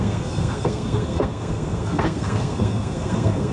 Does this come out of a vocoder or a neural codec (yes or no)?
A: yes